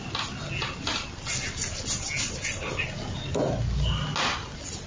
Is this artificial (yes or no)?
no